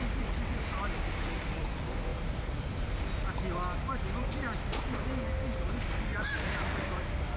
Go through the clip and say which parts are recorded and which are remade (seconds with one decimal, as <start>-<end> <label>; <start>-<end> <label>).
0.0-2.1 recorded; 2.1-3.0 remade; 3.0-6.1 recorded; 6.1-7.4 remade

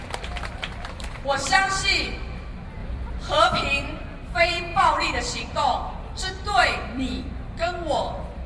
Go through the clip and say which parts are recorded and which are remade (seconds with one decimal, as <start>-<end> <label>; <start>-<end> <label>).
0.0-8.5 remade

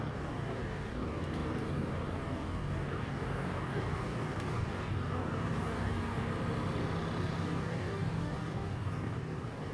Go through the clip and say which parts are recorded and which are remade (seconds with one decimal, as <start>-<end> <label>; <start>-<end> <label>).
0.0-6.3 remade; 6.3-7.4 recorded; 7.4-9.7 remade

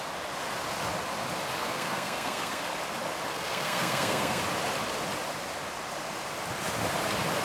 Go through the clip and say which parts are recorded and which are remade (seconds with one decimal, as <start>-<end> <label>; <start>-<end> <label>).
0.0-1.6 recorded; 1.6-2.6 remade; 2.6-3.3 recorded; 3.3-4.4 remade; 4.4-7.4 recorded

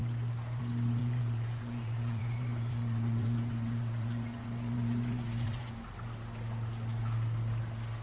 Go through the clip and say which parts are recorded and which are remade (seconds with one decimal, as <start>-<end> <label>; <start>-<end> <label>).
0.0-1.0 recorded; 1.0-5.7 remade; 5.7-8.0 recorded